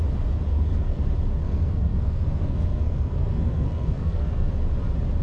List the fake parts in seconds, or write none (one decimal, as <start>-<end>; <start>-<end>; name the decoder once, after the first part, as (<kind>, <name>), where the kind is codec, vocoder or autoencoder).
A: 0.5-1.0 (codec, SNAC); 1.4-4.5